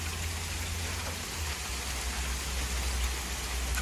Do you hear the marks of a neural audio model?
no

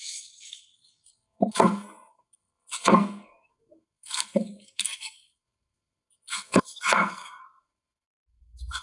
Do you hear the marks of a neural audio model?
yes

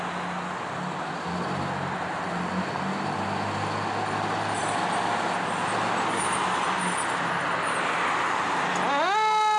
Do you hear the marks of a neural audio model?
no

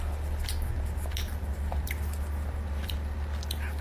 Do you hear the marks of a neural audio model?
no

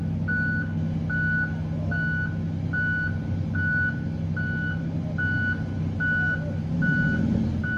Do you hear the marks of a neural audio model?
no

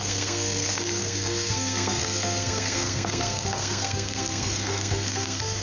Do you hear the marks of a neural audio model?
yes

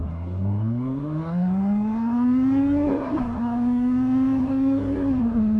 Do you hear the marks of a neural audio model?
yes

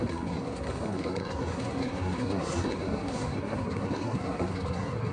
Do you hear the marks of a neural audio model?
yes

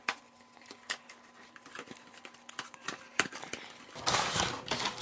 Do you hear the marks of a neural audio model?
no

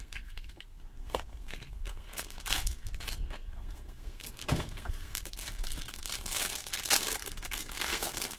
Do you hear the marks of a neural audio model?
yes